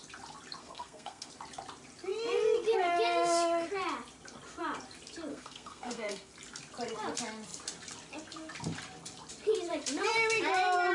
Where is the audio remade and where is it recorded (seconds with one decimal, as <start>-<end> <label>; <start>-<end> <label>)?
0.0-0.6 recorded; 0.6-1.3 remade; 1.3-5.3 recorded; 5.3-6.3 remade; 6.3-10.9 recorded